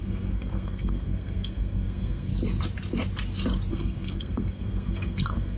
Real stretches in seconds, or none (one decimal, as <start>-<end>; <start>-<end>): 2.3-3.7

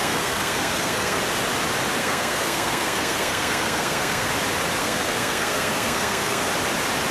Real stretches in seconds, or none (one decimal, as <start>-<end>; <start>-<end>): 1.2-2.0; 4.3-4.8; 6.5-7.1

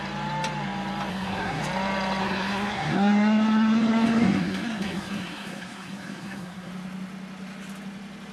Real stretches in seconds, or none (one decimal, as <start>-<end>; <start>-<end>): 0.0-1.1; 1.6-2.2; 6.7-8.3

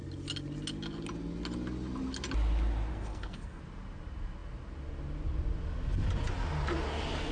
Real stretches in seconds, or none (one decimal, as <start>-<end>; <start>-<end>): 0.0-2.9; 3.6-7.3

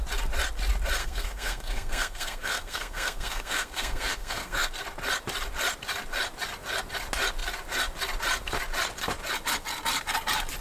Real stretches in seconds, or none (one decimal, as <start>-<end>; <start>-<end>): 0.0-1.0; 4.7-10.6